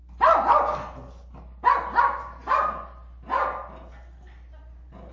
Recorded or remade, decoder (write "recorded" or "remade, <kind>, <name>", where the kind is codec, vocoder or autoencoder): recorded